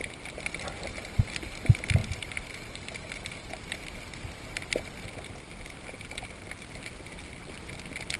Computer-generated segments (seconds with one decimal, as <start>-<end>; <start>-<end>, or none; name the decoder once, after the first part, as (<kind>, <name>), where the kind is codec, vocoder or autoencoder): none